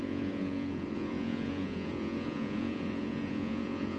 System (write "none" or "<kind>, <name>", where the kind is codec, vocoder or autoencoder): vocoder, Vocos